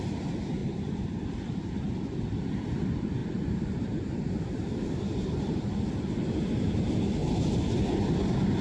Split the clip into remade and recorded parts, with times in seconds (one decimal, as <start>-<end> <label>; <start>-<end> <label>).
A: 0.0-0.6 recorded; 0.6-1.7 remade; 1.7-3.2 recorded; 3.2-6.1 remade; 6.1-8.6 recorded